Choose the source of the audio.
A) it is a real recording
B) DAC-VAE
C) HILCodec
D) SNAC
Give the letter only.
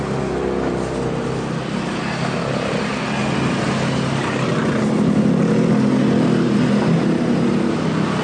A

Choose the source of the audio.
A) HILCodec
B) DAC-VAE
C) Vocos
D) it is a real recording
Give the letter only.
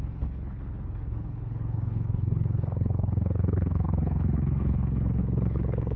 A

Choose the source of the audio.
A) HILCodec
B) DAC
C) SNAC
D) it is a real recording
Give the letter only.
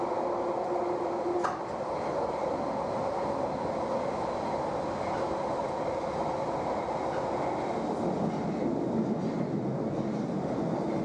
D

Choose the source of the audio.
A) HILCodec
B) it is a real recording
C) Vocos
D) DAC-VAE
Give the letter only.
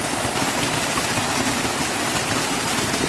B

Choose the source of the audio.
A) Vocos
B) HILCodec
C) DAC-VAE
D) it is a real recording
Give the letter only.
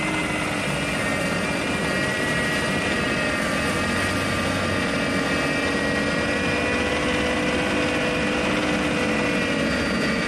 D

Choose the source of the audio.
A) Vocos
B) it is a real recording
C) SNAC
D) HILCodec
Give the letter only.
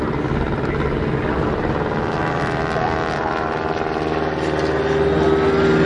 B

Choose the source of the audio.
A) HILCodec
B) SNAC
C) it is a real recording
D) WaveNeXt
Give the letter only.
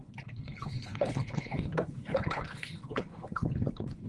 A